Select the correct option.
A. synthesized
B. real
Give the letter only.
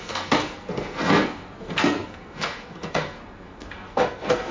A